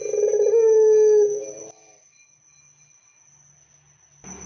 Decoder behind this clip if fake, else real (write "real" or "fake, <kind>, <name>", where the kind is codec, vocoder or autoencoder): real